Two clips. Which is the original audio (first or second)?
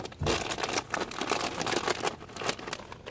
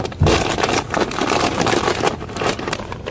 first